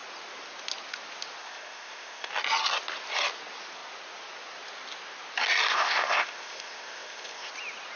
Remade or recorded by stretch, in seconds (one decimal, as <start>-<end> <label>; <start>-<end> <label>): 0.0-1.4 recorded; 1.4-2.3 remade; 2.3-5.7 recorded; 5.7-7.5 remade; 7.5-8.0 recorded